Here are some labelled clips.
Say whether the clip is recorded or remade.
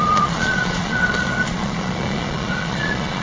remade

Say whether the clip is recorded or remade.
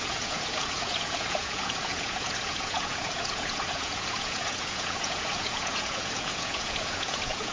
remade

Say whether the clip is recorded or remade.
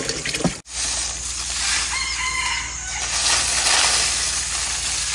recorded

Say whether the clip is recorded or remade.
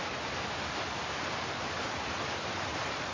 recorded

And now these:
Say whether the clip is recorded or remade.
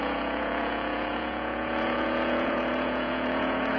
remade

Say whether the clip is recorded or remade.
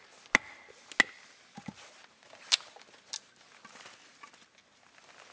recorded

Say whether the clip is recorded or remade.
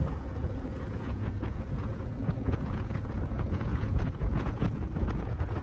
remade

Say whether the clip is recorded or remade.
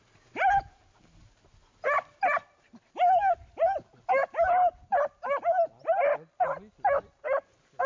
recorded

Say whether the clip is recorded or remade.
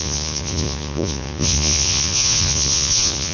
remade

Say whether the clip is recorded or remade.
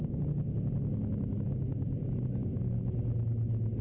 recorded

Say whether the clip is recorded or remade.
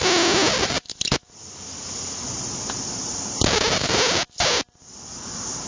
recorded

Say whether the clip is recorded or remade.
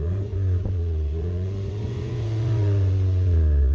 remade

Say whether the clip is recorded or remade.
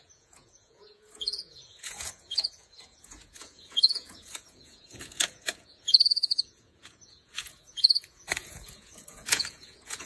remade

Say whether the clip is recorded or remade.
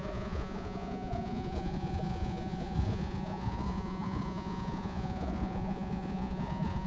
remade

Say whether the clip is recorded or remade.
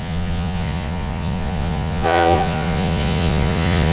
remade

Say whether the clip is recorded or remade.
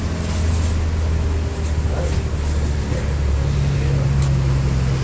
recorded